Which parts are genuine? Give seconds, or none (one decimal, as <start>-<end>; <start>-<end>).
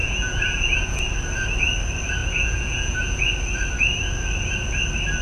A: 1.0-2.2; 3.2-5.2